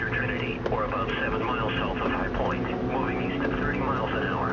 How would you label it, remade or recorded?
recorded